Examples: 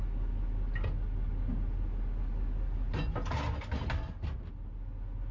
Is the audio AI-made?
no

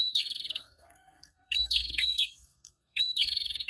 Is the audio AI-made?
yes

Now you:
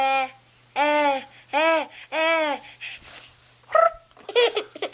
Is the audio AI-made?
no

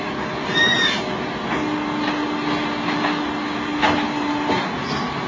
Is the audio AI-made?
no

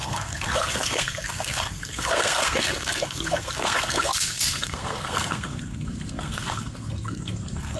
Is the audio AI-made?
yes